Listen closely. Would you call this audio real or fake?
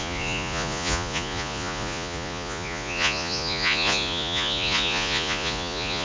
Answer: fake